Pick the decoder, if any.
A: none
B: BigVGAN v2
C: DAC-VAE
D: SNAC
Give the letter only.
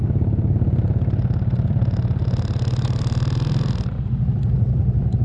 A